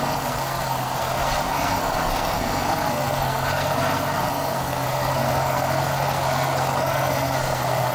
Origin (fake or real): fake